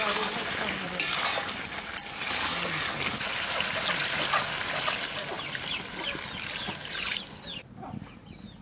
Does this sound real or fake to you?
real